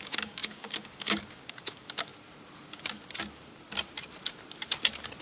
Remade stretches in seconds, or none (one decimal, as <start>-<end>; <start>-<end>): 0.0-2.1